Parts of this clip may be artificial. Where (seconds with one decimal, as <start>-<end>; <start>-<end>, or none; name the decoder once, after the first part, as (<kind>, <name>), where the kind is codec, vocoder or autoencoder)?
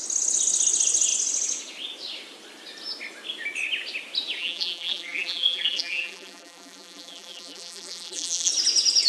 4.4-8.5 (vocoder, BigVGAN v2)